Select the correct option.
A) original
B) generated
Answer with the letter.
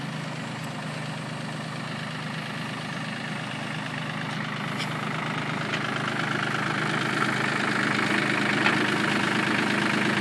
A